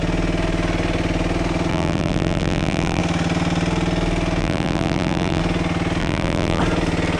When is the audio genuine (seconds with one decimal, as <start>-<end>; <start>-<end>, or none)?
0.0-1.7; 3.0-4.4; 5.4-6.0; 6.6-7.2